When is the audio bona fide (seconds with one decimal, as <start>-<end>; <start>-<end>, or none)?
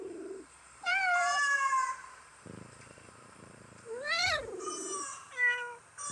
none